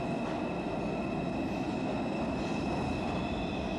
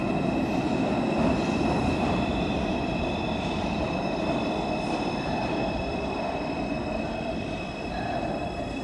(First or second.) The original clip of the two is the first